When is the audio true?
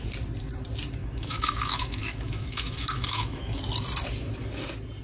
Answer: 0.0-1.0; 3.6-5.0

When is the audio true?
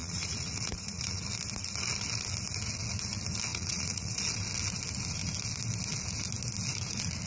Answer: 1.2-3.5; 4.2-7.3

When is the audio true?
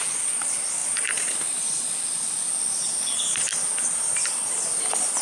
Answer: 0.0-0.8; 2.9-3.5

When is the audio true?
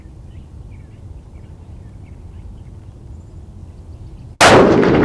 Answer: 0.0-5.0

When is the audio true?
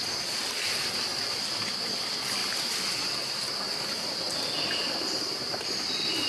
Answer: 0.0-6.3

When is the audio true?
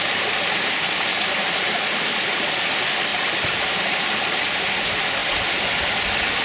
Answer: 0.0-1.1; 1.7-3.1; 4.6-6.4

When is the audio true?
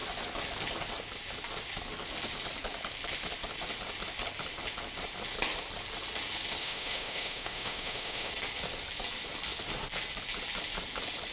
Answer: 0.0-6.6; 8.3-11.3